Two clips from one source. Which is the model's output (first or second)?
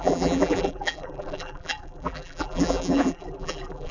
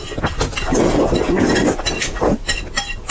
first